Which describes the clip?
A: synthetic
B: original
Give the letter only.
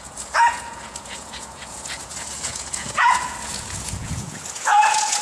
A